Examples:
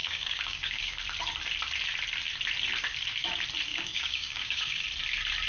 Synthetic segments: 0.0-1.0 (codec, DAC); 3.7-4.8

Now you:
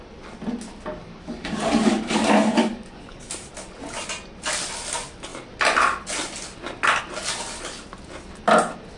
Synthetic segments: 1.0-3.3 (codec, DAC)